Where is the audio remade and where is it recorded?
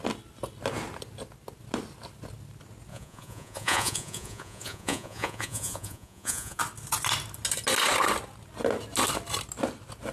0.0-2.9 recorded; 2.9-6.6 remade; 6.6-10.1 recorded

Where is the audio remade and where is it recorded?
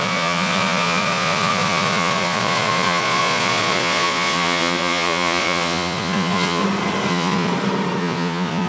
0.0-6.6 remade; 6.6-7.1 recorded; 7.1-7.5 remade; 7.5-8.0 recorded; 8.0-8.7 remade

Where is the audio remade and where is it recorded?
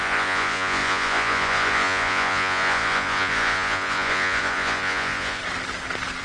0.0-5.4 remade; 5.4-6.2 recorded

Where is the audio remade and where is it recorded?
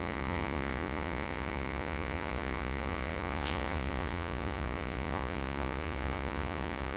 0.0-7.0 remade